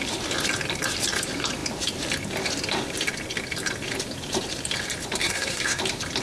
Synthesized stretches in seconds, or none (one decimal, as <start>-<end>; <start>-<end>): 5.2-5.8